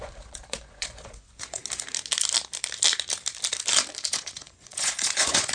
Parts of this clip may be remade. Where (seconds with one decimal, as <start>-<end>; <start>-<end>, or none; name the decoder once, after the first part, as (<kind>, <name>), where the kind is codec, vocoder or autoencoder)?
0.0-1.6 (vocoder, Vocos); 4.1-5.5